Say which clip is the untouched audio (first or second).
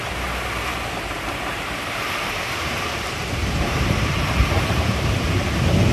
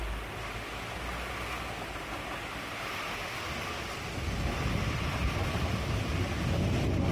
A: second